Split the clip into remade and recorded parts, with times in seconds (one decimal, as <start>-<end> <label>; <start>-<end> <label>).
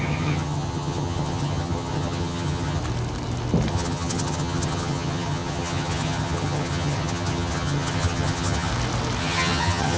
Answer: 0.0-2.8 remade; 2.8-3.7 recorded; 3.7-8.7 remade; 8.7-9.2 recorded; 9.2-10.0 remade